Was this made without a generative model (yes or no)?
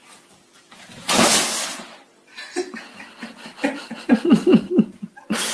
yes